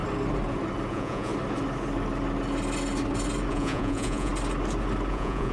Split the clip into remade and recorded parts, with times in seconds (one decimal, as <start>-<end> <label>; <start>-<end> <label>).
0.0-0.9 recorded; 0.9-1.3 remade; 1.3-3.5 recorded; 3.5-4.3 remade; 4.3-5.1 recorded; 5.1-5.5 remade